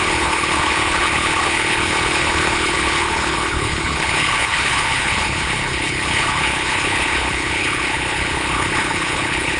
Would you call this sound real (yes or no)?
no